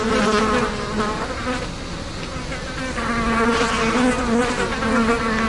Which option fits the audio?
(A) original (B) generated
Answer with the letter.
A